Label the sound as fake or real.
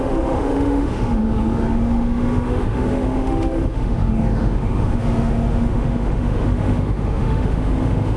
fake